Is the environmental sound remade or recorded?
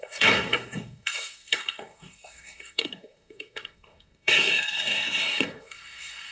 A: remade